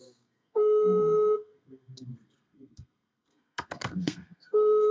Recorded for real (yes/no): no